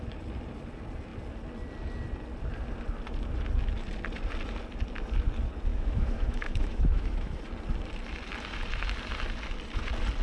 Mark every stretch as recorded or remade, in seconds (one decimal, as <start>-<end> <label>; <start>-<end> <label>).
0.0-5.7 recorded; 5.7-7.4 remade; 7.4-10.2 recorded